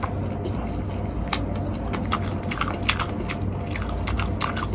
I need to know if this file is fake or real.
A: real